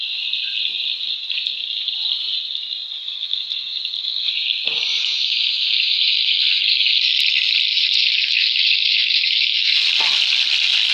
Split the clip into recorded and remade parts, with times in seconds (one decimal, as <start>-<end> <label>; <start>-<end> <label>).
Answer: 0.0-3.0 recorded; 3.0-4.3 remade; 4.3-5.0 recorded; 5.0-7.0 remade; 7.0-7.7 recorded; 7.7-9.9 remade; 9.9-10.9 recorded